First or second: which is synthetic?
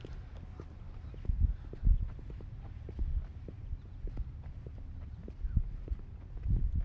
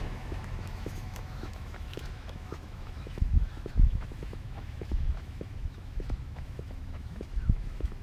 second